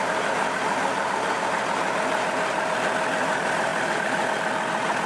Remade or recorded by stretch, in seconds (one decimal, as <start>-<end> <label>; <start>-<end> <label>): 0.0-5.1 recorded